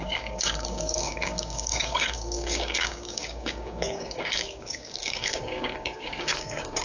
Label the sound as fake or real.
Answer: fake